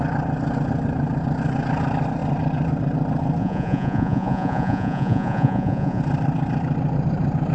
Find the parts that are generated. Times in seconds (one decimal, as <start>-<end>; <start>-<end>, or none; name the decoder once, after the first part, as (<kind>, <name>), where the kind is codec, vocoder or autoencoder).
3.4-6.0 (vocoder, Vocos)